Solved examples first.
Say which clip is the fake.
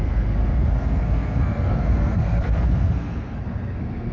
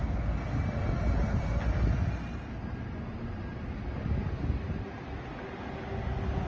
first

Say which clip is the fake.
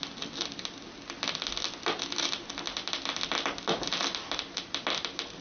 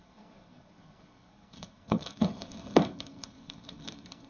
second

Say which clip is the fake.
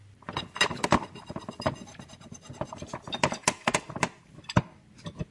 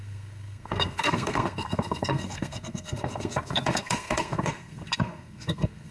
second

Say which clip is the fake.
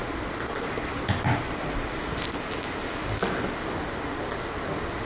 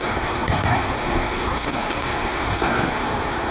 second